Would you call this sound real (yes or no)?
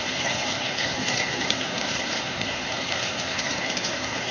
no